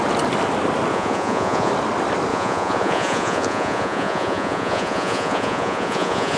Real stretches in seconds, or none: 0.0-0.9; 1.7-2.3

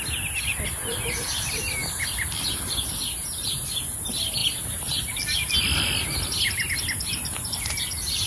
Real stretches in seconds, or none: 0.0-8.3

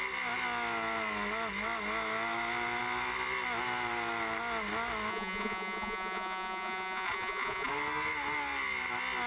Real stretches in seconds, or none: 0.0-5.1; 7.7-9.3

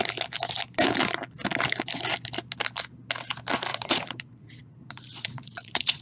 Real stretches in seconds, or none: 0.0-3.7